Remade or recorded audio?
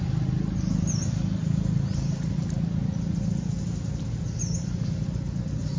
recorded